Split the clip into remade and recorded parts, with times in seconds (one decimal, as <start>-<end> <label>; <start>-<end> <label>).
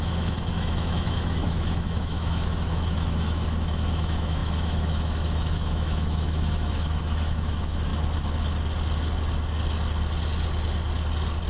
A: 0.0-7.9 remade; 7.9-11.5 recorded